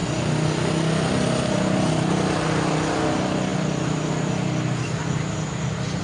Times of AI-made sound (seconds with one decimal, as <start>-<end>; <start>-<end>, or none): none

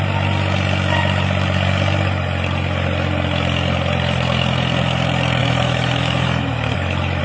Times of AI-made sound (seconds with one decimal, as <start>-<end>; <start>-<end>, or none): 5.4-7.2

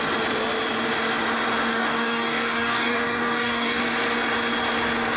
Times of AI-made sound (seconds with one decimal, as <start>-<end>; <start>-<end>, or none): 1.7-3.8

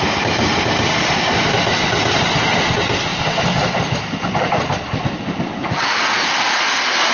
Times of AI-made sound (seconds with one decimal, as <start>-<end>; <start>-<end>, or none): none

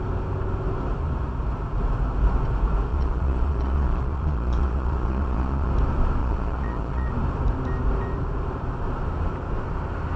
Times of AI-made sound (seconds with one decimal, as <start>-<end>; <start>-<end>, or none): 2.9-5.7; 6.2-7.1

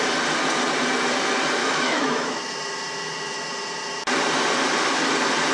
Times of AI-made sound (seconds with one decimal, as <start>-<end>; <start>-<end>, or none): 1.6-2.4